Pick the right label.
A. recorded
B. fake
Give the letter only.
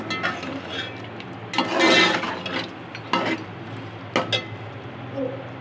A